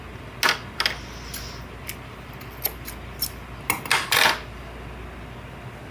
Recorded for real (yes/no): yes